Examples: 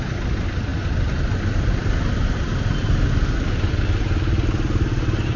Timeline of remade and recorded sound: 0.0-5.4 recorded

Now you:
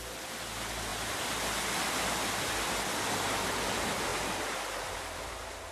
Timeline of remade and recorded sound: 0.0-5.7 recorded

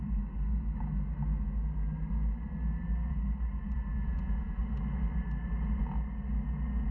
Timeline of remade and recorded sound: 0.0-3.9 recorded; 3.9-4.6 remade; 4.6-6.9 recorded

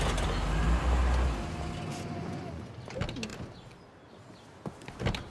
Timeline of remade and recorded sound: 0.0-1.9 recorded; 1.9-2.7 remade; 2.7-5.3 recorded

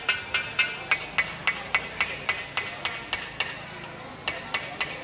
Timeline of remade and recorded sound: 0.0-5.0 recorded